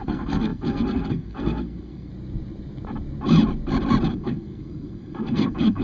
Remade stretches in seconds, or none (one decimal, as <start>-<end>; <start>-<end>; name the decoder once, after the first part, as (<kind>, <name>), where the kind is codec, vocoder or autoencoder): 0.0-2.1 (codec, SNAC); 4.1-5.8